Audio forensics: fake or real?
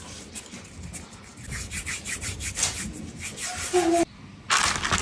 real